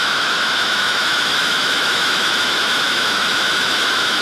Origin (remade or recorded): remade